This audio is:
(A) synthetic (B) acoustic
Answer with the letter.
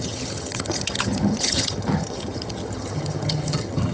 A